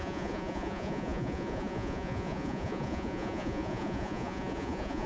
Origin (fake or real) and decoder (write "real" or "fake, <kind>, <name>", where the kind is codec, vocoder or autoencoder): fake, vocoder, Vocos